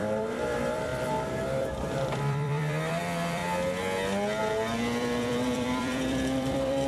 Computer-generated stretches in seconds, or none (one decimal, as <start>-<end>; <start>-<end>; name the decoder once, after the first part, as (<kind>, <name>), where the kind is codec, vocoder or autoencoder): 0.0-3.4 (vocoder, BigVGAN v2); 4.4-6.9